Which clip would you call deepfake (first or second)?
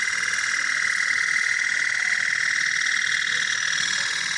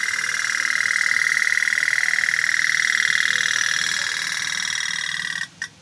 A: first